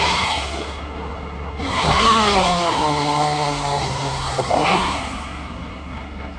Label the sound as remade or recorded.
remade